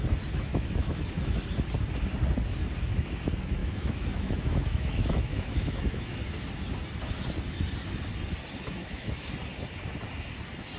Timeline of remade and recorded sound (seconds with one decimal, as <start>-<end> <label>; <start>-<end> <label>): 0.0-0.5 recorded; 0.5-1.4 remade; 1.4-3.6 recorded; 3.6-6.2 remade; 6.2-8.8 recorded; 8.8-9.3 remade; 9.3-10.8 recorded